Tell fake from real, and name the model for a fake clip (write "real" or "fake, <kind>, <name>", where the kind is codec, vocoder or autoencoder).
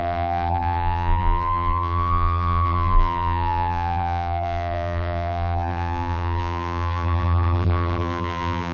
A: fake, vocoder, BigVGAN v2